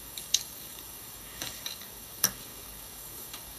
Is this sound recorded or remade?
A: remade